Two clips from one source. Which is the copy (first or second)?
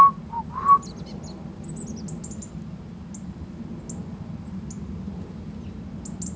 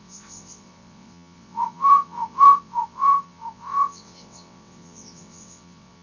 second